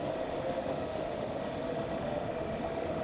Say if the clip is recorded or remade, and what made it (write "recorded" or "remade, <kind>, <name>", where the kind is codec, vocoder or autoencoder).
remade, autoencoder, DAC-VAE